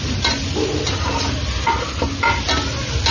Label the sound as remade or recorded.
recorded